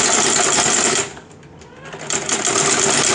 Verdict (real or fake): real